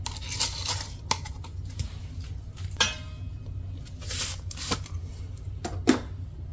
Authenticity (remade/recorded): recorded